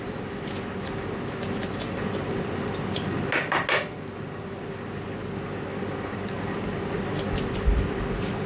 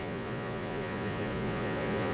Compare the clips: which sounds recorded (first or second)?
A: first